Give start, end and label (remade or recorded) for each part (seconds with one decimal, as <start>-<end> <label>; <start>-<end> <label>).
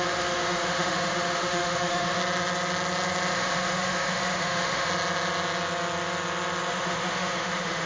0.0-2.2 remade; 2.2-3.3 recorded; 3.3-4.9 remade; 4.9-6.7 recorded; 6.7-7.9 remade